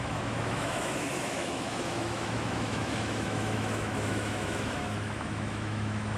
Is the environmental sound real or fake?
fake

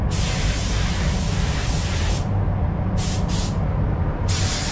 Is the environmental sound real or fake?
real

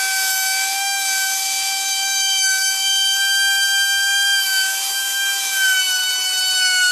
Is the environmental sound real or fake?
fake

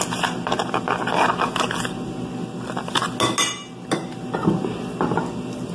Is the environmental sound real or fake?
real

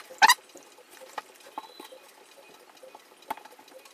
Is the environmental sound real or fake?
real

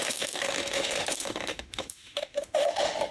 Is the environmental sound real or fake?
fake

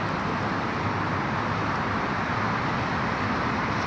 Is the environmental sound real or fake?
real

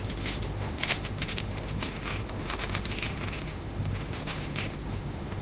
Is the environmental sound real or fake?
fake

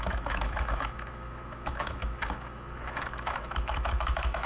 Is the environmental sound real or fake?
fake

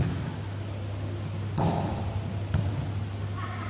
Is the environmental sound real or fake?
real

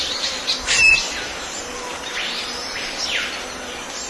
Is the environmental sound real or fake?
real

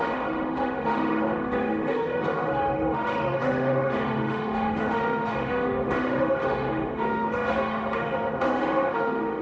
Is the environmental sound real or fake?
fake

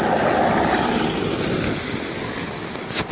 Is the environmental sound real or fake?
real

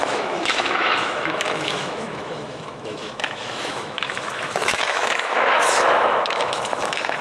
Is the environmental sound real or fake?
fake